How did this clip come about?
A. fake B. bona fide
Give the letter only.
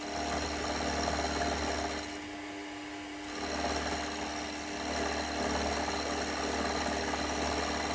B